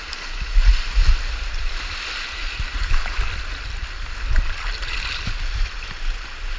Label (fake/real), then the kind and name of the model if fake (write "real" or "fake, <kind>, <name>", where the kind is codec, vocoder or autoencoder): real